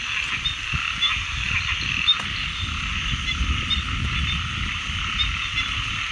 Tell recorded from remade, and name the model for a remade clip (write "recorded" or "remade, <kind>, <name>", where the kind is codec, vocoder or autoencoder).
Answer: recorded